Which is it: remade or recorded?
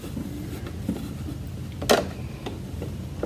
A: recorded